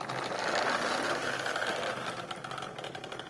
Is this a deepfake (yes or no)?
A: no